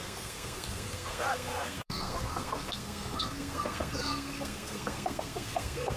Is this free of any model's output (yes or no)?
no